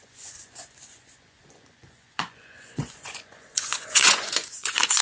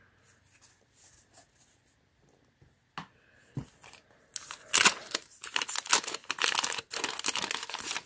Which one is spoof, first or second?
first